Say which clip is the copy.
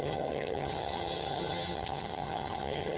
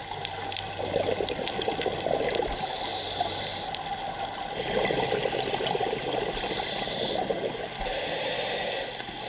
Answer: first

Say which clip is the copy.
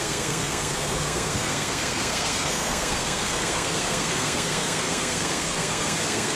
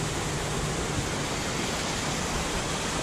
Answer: first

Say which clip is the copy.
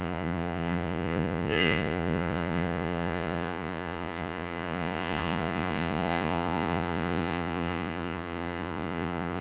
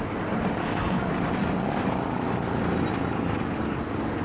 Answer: first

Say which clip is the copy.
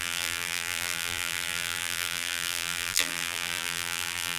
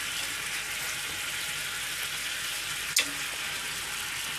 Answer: first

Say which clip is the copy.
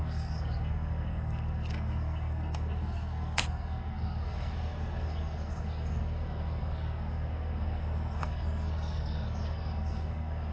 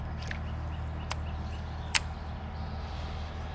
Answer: first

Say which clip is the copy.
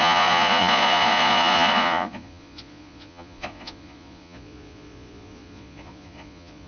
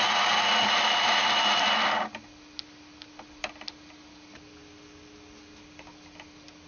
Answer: first